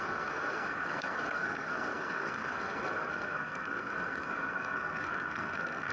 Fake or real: fake